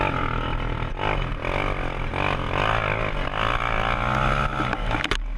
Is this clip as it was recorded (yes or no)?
yes